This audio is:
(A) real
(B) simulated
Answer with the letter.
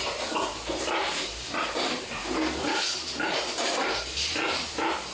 A